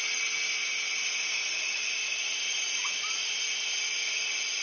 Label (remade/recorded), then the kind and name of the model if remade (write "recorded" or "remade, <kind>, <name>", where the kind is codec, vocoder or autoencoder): recorded